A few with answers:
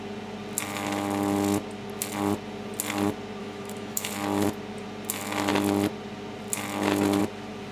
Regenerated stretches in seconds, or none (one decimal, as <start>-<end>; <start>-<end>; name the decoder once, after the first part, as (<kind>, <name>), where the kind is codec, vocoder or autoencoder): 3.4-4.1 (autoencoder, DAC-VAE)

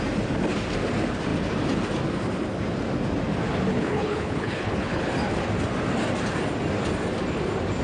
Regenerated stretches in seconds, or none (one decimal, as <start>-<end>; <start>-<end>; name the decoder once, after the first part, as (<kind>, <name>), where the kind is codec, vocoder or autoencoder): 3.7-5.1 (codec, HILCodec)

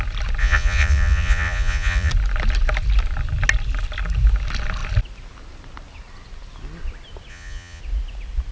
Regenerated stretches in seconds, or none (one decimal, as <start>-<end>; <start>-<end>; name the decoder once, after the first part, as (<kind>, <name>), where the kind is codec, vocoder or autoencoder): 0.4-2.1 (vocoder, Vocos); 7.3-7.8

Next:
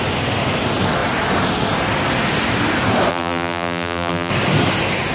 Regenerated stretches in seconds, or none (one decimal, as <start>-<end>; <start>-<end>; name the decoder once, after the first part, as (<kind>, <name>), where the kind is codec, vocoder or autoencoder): 3.1-4.3 (vocoder, BigVGAN v2)

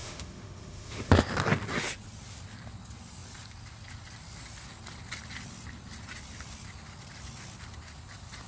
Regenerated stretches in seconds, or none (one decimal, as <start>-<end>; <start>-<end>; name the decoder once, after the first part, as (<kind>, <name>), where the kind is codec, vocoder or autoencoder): 0.0-1.1 (autoencoder, DAC-VAE)

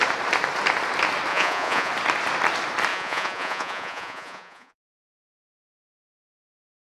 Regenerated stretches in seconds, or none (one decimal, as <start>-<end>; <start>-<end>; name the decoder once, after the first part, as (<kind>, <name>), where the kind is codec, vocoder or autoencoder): 1.3-1.9 (vocoder, Vocos); 2.9-6.2

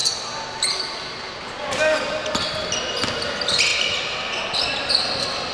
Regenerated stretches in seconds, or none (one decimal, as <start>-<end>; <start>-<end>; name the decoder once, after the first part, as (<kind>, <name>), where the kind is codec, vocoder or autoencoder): none